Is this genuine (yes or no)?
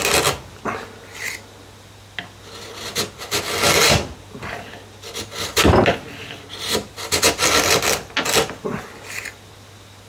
yes